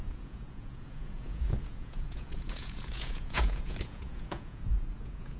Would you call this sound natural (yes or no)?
no